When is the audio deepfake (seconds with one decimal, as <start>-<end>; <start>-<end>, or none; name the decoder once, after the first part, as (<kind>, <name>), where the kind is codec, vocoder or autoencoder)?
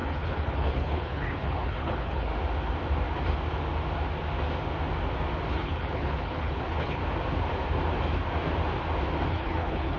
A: 0.0-2.3 (codec, HILCodec); 5.5-7.0; 9.3-10.0